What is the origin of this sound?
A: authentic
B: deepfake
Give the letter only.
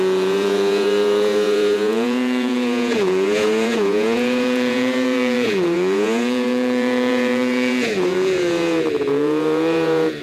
B